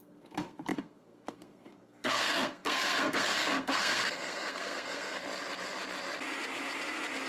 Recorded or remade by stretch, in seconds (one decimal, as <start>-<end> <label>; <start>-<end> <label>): 0.0-5.2 remade; 5.2-7.3 recorded